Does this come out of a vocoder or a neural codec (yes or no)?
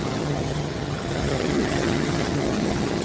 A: yes